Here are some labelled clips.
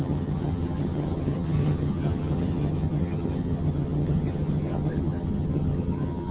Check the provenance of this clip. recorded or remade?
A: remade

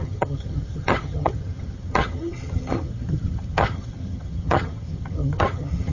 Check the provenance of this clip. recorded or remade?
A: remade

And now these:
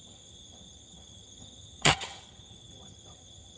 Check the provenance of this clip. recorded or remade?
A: remade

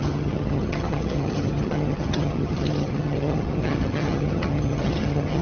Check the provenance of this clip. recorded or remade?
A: remade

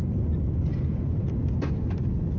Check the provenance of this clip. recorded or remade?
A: recorded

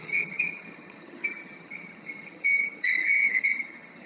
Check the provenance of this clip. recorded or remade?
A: remade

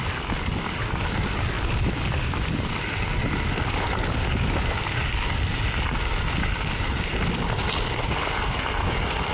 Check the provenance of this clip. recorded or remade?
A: recorded